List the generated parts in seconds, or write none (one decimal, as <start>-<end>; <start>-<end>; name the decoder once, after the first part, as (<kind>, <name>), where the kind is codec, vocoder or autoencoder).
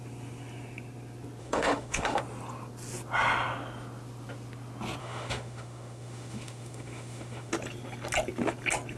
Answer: 1.4-2.2 (autoencoder, DAC-VAE); 5.0-7.5